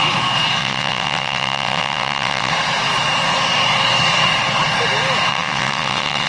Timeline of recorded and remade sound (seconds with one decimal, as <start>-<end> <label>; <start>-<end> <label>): 0.0-0.6 recorded; 0.6-2.5 remade; 2.5-5.3 recorded; 5.3-6.3 remade